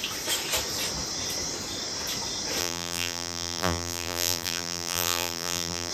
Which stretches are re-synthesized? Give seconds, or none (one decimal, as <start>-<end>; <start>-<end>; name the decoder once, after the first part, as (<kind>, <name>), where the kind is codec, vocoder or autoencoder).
2.6-5.9 (vocoder, BigVGAN v2)